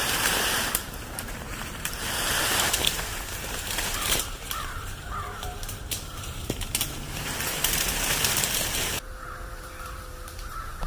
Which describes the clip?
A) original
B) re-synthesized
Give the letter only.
B